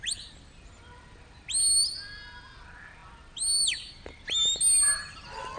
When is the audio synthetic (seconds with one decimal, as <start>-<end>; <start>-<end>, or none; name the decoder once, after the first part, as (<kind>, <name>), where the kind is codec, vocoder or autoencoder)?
none